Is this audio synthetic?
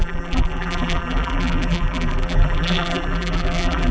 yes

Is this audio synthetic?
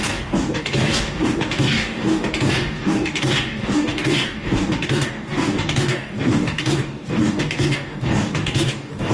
yes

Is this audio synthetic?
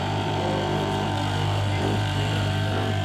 yes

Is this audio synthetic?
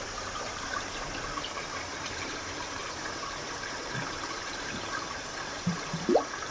yes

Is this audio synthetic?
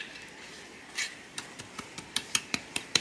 yes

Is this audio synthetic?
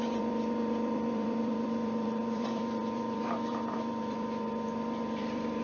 yes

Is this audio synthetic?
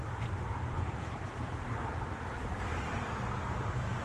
yes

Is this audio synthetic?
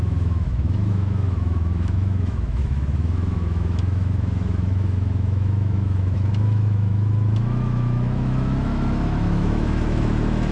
yes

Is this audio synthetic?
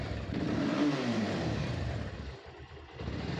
yes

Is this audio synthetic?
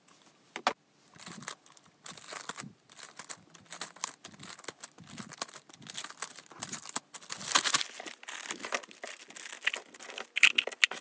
no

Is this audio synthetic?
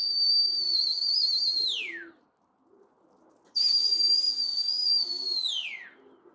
no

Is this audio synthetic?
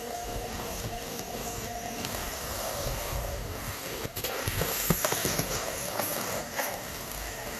yes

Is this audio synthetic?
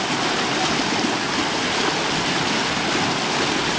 no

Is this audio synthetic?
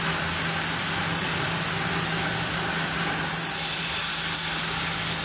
no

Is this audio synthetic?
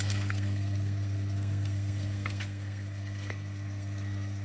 yes